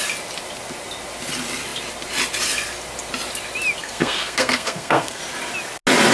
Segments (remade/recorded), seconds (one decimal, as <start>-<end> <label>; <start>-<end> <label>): 0.0-3.8 recorded; 3.8-5.2 remade; 5.2-6.1 recorded